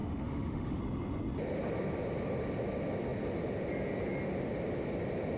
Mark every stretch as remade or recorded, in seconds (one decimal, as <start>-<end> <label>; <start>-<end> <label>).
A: 0.0-0.8 remade; 0.8-5.4 recorded